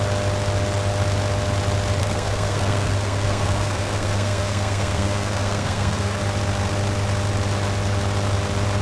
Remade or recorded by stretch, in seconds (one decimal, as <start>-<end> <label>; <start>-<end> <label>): 0.0-2.0 recorded; 2.0-6.2 remade; 6.2-8.8 recorded

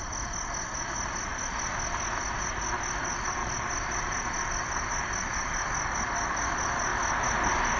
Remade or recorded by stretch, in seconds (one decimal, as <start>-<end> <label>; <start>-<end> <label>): 0.0-7.8 recorded

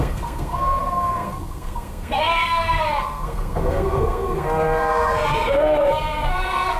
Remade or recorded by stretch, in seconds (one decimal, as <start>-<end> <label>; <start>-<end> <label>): 0.0-6.8 remade

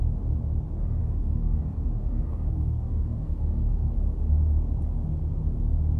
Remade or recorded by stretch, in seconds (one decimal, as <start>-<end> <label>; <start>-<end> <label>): 0.0-1.0 recorded; 1.0-1.6 remade; 1.6-2.0 recorded; 2.0-3.9 remade; 3.9-6.0 recorded

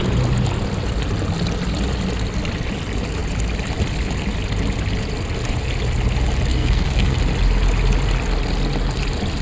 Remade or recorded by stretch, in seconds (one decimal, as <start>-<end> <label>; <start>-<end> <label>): 0.0-6.5 recorded; 6.5-7.2 remade; 7.2-9.4 recorded

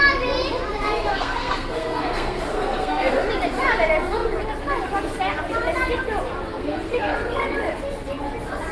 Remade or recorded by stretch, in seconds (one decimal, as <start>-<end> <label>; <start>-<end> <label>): 0.0-1.1 recorded; 1.1-3.1 remade; 3.1-6.5 recorded; 6.5-7.4 remade; 7.4-8.7 recorded

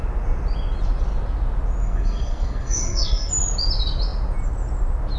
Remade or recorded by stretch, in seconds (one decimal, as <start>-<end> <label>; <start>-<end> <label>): 0.0-1.8 recorded; 1.8-3.3 remade; 3.3-5.2 recorded

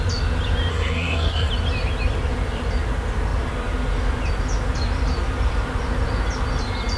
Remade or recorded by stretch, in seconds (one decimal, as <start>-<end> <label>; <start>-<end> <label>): 0.0-0.7 recorded; 0.7-1.5 remade; 1.5-7.0 recorded